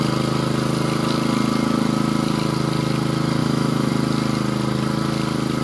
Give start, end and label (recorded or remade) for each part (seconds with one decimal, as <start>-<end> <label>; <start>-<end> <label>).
0.0-3.4 recorded; 3.4-3.9 remade; 3.9-5.6 recorded